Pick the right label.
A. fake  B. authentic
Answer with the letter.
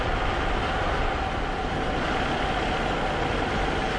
B